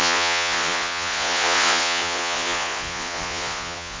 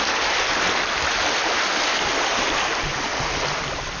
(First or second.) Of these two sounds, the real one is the second